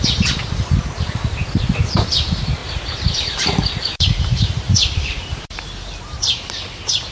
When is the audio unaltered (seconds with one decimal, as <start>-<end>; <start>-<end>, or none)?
0.0-2.6; 6.5-7.1